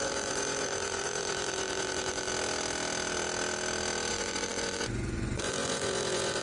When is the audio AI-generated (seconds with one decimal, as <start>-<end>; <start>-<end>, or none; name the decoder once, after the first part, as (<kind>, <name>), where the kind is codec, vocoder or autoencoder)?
0.0-2.3 (vocoder, Vocos); 4.1-6.4